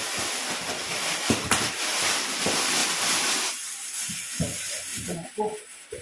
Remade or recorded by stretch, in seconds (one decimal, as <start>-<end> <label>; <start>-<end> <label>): 0.0-1.9 recorded; 1.9-2.4 remade; 2.4-4.9 recorded; 4.9-5.6 remade; 5.6-6.0 recorded